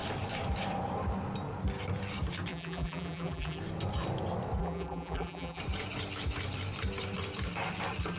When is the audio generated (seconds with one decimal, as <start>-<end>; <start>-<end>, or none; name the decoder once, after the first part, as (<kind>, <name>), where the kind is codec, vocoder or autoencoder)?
2.5-3.6 (vocoder, BigVGAN v2); 4.6-5.6